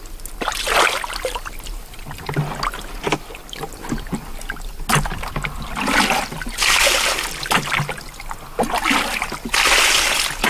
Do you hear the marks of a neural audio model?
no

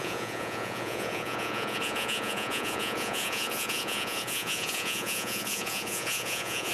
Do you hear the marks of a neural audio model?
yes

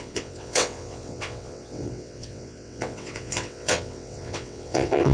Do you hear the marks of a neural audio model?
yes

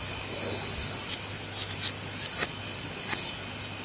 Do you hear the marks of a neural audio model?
no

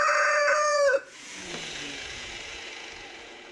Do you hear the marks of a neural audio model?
yes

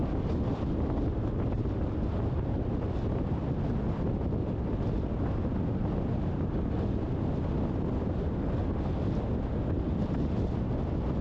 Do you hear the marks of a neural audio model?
no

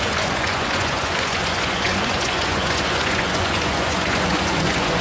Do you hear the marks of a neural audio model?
yes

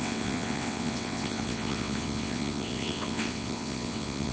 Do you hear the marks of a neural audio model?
yes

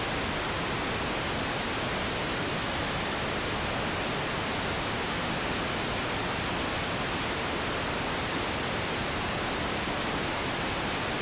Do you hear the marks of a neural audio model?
no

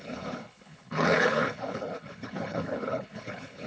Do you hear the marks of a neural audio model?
yes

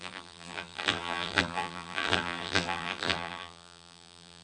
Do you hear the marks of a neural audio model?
yes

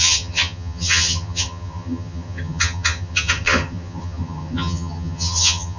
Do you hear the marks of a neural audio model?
yes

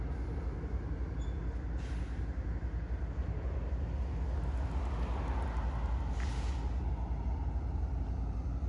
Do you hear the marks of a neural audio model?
no